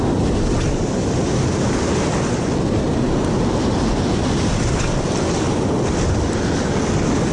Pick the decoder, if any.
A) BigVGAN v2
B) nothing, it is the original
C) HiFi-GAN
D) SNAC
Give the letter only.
B